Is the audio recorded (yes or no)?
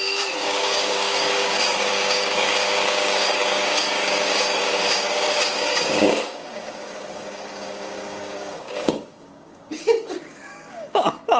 no